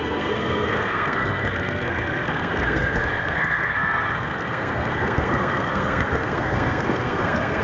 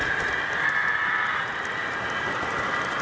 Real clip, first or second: second